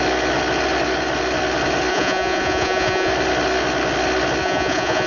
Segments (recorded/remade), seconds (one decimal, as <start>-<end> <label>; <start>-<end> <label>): 0.0-1.9 recorded; 1.9-3.1 remade; 3.1-4.4 recorded; 4.4-5.1 remade